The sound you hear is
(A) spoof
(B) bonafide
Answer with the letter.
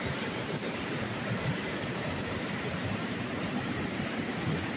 A